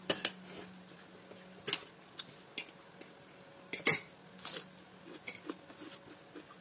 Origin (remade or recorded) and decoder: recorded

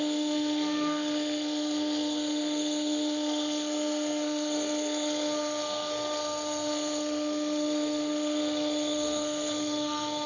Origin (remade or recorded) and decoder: remade, codec, SNAC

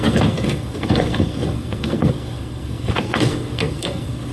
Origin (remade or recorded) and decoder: remade, codec, SNAC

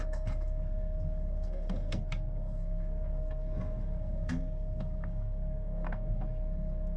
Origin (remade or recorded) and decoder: remade, codec, SNAC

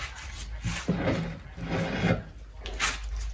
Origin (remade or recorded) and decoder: recorded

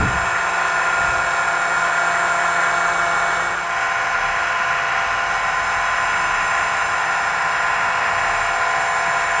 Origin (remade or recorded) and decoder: recorded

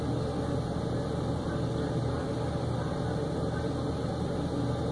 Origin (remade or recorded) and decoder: recorded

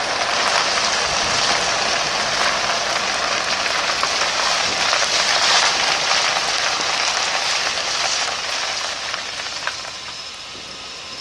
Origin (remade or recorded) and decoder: recorded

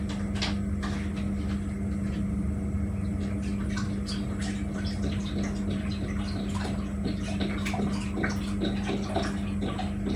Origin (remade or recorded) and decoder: recorded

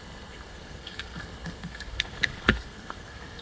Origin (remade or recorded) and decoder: remade, codec, SNAC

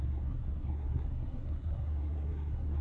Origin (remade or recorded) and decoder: remade, codec, SNAC